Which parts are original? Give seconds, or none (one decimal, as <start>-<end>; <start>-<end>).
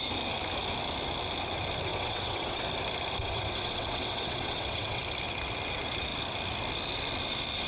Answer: 0.0-1.9; 2.6-3.2; 5.0-7.7